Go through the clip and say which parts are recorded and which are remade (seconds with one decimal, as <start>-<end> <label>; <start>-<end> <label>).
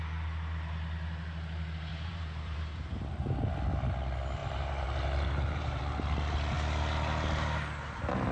0.0-1.9 recorded; 1.9-3.3 remade; 3.3-4.4 recorded; 4.4-5.8 remade; 5.8-8.3 recorded